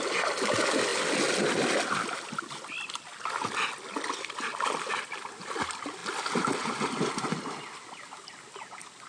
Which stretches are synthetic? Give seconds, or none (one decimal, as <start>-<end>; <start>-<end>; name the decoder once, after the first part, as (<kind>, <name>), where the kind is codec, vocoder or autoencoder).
none